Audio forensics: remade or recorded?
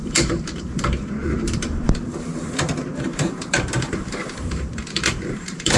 remade